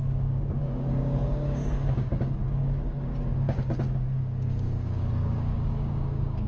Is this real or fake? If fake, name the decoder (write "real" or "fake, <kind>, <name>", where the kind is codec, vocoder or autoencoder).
fake, codec, DAC